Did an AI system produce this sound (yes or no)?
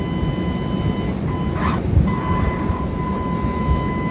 no